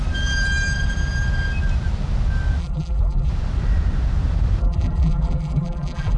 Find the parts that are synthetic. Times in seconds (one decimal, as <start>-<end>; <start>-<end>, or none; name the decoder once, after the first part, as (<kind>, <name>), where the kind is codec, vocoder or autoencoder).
2.6-3.3 (vocoder, BigVGAN v2); 4.6-6.2